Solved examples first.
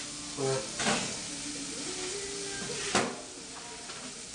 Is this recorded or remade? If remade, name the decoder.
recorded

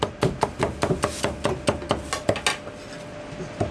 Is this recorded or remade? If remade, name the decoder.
recorded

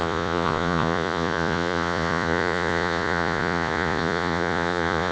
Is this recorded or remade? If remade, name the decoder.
remade, vocoder, Vocos